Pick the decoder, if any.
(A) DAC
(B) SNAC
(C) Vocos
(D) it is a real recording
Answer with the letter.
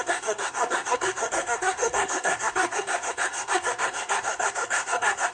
B